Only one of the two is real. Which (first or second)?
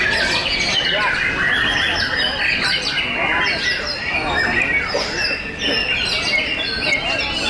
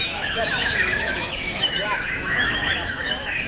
first